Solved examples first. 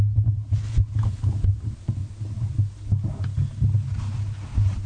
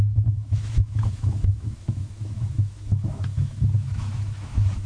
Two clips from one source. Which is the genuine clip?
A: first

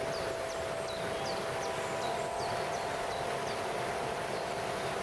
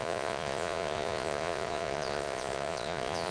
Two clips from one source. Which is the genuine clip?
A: first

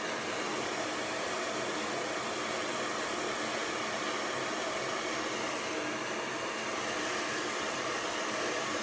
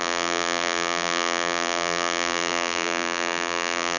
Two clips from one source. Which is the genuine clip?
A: first